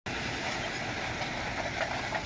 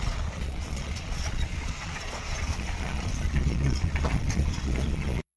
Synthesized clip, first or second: second